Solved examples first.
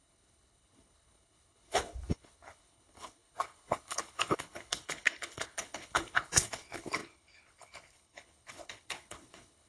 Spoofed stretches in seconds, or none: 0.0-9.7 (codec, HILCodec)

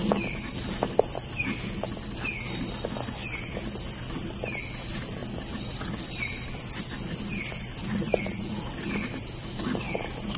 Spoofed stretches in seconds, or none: 7.8-8.6 (vocoder, Vocos)

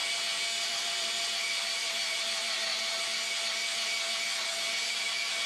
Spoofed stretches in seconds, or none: 0.7-2.7 (vocoder, BigVGAN v2)